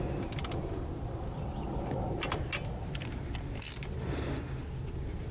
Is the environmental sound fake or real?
real